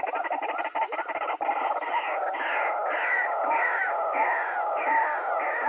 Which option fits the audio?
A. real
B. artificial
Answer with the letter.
A